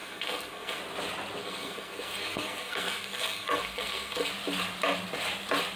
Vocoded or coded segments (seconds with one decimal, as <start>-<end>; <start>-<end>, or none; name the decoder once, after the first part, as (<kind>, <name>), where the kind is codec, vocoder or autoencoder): 0.0-0.8 (codec, SNAC); 1.4-4.3